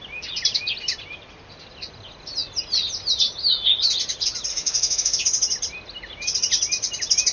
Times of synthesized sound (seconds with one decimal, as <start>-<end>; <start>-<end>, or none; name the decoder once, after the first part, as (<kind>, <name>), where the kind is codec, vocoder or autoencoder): 4.5-5.2 (autoencoder, DAC-VAE)